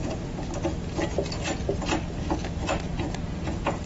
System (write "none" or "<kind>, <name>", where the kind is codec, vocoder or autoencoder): none